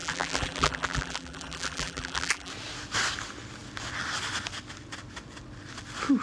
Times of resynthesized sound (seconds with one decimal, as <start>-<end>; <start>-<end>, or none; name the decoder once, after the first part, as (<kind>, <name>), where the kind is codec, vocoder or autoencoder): 0.0-2.5 (vocoder, BigVGAN v2)